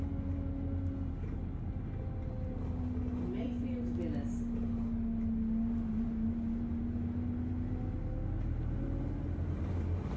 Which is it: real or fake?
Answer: real